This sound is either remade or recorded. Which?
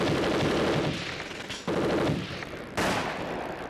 recorded